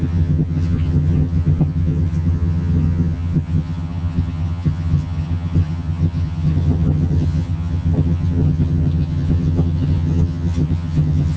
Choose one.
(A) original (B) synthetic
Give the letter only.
B